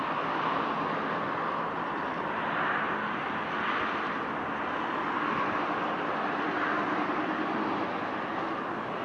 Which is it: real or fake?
real